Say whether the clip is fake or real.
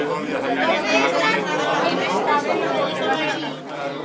real